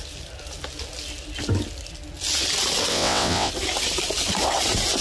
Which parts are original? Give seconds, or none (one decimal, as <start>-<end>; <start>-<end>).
0.0-2.9; 3.5-5.0